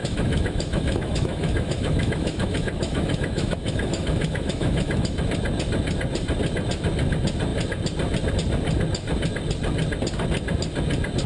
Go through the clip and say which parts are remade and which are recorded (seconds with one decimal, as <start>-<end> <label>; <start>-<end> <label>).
0.0-5.2 remade; 5.2-11.3 recorded